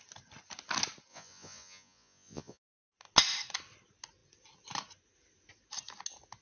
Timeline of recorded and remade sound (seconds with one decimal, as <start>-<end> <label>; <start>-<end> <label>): 0.0-1.1 recorded; 1.1-2.8 remade; 2.8-6.4 recorded